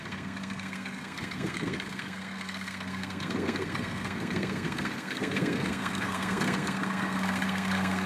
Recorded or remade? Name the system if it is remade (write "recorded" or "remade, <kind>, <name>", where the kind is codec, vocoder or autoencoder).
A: remade, codec, SNAC